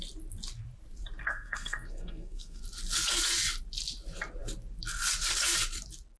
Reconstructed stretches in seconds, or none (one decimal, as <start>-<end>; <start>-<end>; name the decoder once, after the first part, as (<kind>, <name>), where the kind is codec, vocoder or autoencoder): 1.2-2.6 (codec, SNAC)